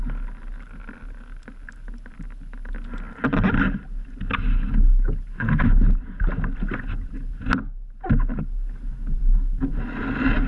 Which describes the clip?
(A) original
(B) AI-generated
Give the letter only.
A